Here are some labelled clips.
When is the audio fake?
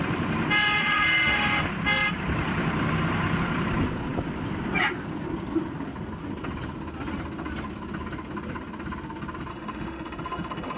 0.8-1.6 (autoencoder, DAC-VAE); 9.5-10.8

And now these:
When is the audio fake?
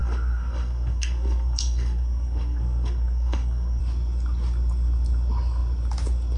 0.0-3.8 (codec, SNAC)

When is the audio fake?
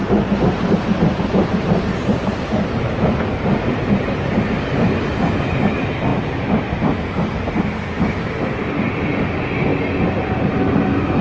0.0-4.4 (vocoder, BigVGAN v2)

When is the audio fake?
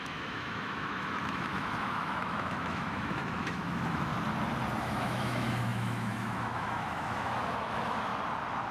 0.0-4.1 (autoencoder, DAC-VAE); 4.8-8.1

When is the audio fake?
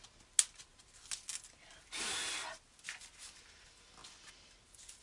none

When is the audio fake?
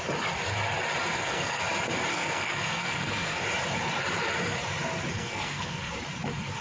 1.1-1.6 (codec, SNAC); 2.1-3.4; 5.1-5.9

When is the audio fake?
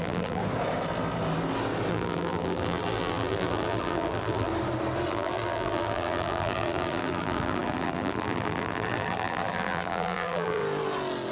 0.0-0.4 (vocoder, BigVGAN v2); 1.9-4.5; 5.1-10.6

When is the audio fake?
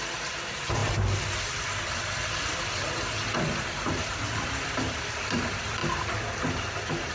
none